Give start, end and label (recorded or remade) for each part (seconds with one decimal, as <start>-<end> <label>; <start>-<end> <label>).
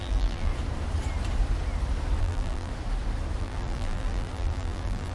0.0-0.5 remade; 0.5-2.2 recorded; 2.2-2.7 remade; 2.7-3.4 recorded; 3.4-5.1 remade